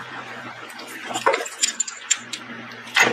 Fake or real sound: fake